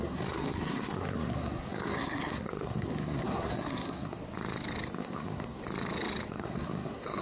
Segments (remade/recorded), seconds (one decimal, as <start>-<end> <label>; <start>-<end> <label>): 0.0-4.2 remade; 4.2-5.0 recorded; 5.0-5.6 remade; 5.6-6.3 recorded; 6.3-7.2 remade